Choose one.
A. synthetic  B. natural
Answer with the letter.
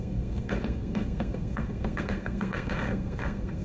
A